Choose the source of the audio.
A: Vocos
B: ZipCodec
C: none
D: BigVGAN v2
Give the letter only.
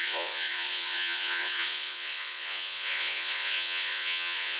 A